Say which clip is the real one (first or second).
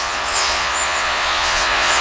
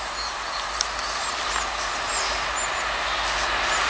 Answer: second